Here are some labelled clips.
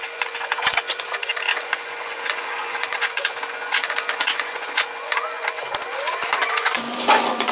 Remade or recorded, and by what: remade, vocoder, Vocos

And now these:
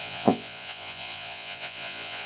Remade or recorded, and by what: remade, vocoder, Vocos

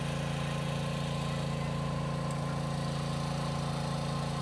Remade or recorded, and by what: recorded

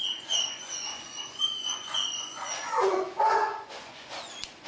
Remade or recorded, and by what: remade, vocoder, Vocos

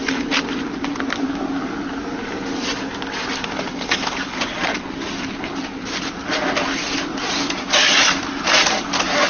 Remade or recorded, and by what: recorded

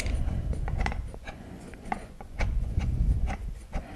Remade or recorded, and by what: remade, vocoder, Vocos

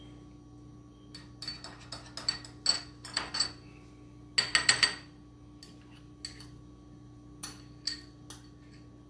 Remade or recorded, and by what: recorded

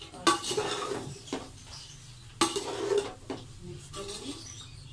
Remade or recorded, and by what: recorded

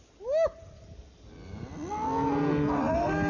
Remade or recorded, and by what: recorded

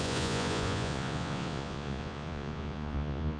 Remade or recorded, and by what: remade, vocoder, Vocos